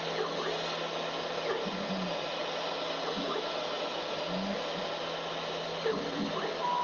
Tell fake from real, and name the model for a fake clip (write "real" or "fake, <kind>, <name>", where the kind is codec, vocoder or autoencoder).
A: real